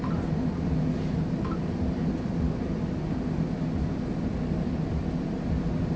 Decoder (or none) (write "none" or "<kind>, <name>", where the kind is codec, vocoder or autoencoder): none